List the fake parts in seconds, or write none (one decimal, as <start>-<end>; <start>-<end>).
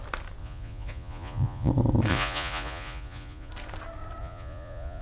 0.4-1.7; 2.1-3.5; 4.2-5.0